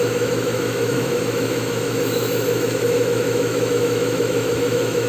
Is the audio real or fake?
fake